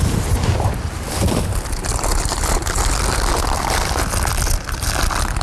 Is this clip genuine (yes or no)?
yes